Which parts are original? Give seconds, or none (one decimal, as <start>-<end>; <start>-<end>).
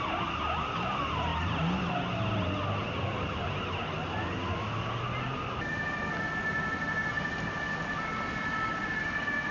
0.0-9.5